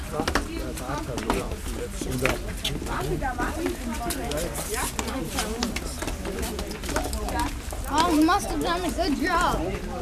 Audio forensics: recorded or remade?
recorded